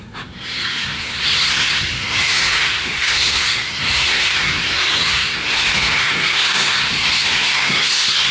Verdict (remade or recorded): remade